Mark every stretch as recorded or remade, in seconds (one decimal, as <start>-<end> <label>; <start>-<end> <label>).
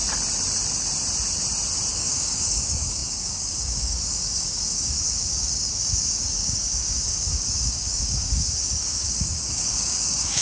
0.0-1.9 recorded; 1.9-10.4 remade